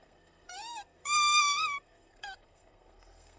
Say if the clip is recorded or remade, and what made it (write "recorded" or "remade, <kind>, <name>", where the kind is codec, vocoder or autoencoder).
remade, codec, SNAC